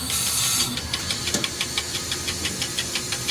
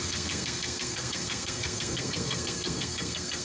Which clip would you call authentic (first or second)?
first